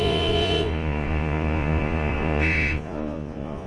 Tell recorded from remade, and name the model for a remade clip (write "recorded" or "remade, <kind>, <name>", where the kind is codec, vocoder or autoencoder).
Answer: remade, vocoder, Vocos